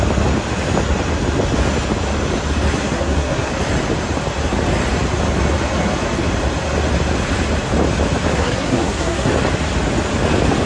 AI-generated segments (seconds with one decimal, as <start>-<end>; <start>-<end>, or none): 2.8-3.5; 8.3-9.3